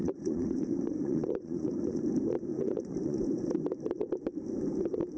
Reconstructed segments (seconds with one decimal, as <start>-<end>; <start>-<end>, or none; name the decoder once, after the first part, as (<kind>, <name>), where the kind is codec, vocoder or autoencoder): 0.0-2.0 (vocoder, Vocos); 2.5-3.4